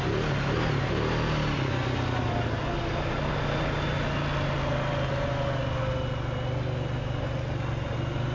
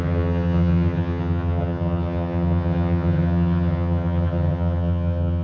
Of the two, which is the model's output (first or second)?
second